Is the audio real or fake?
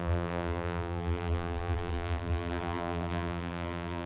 fake